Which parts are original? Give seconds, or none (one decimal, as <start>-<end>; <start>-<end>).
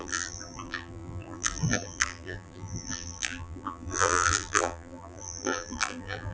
none